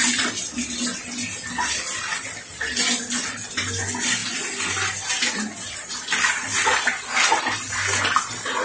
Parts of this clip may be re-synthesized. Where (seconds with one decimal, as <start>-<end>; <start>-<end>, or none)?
none